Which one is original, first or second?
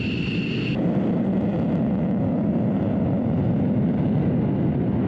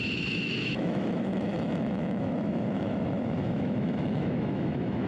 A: first